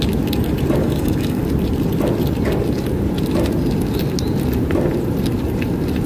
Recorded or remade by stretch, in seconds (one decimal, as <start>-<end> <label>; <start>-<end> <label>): 0.0-0.8 recorded; 0.8-1.4 remade; 1.4-6.1 recorded